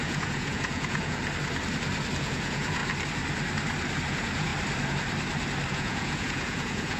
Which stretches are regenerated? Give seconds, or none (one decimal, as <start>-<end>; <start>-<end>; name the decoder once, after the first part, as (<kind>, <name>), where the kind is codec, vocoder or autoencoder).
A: 0.0-1.2 (vocoder, Vocos); 2.2-2.8; 4.1-4.5; 5.7-7.0